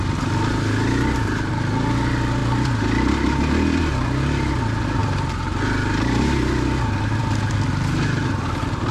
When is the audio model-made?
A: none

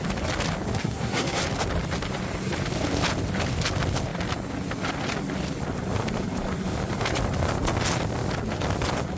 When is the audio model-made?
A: 0.8-1.4